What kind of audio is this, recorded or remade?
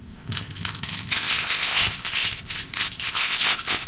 remade